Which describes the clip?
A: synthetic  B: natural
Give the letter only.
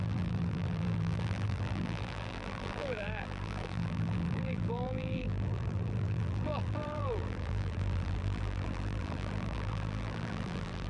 A